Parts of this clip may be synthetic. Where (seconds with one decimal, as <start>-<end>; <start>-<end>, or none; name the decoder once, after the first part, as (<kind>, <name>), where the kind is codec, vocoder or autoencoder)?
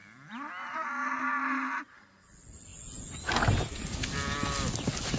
none